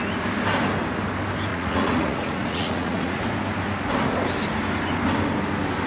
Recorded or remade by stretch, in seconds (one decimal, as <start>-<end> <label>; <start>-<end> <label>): 0.0-1.5 recorded; 1.5-3.2 remade; 3.2-5.9 recorded